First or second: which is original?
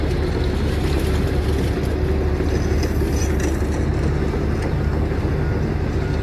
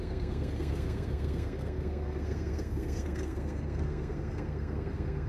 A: first